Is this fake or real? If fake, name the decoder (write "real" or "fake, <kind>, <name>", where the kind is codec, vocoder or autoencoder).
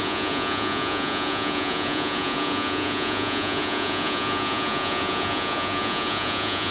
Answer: fake, vocoder, Vocos